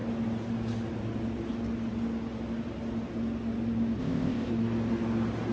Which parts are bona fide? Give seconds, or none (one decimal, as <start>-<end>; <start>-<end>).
0.0-4.0; 4.5-5.5